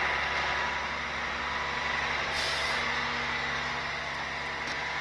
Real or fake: real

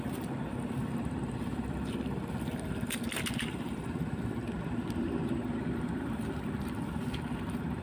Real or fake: real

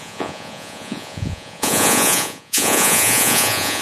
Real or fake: fake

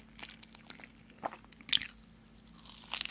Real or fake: real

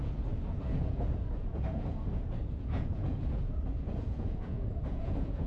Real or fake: fake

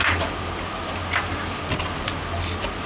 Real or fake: real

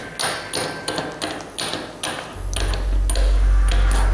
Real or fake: real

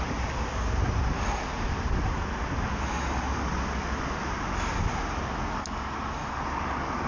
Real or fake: real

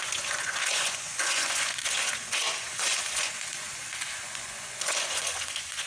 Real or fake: fake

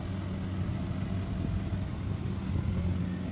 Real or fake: real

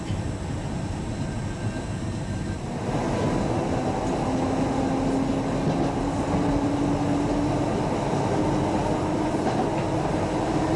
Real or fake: real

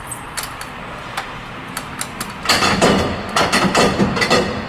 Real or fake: real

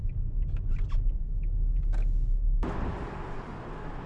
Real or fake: real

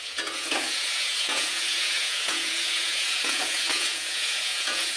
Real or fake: fake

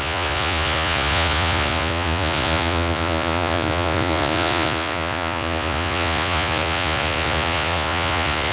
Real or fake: fake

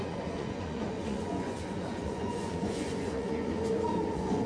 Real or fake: fake